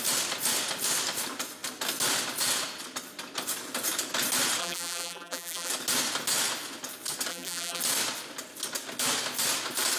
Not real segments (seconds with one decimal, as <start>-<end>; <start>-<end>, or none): 4.6-5.7; 7.3-7.8